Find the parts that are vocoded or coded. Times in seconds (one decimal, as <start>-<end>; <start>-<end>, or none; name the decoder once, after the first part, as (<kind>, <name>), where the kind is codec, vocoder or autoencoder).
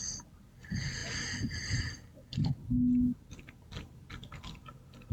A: none